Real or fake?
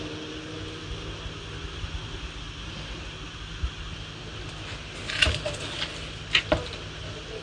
real